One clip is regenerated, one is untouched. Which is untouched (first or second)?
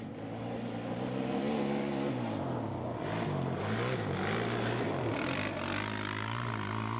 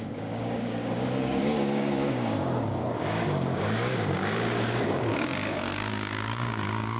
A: first